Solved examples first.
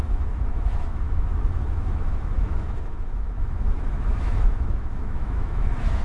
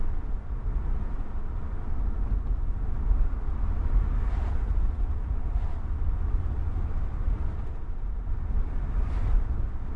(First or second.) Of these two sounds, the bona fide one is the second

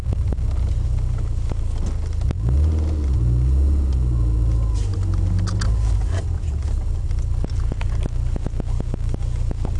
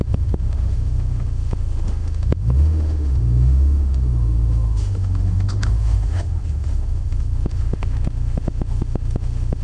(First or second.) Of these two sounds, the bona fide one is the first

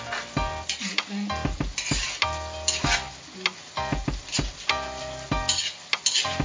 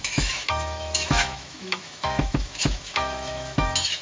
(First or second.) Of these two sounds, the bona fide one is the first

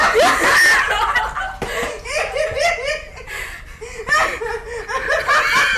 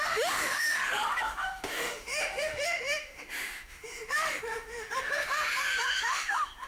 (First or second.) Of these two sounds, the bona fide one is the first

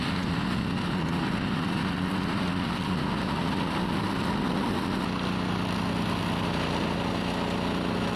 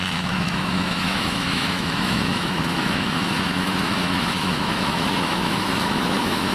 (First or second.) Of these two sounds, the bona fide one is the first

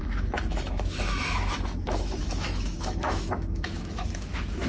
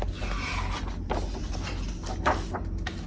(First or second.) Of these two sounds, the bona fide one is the second